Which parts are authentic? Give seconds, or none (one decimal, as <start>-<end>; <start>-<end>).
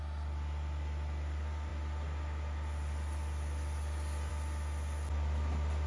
0.0-5.9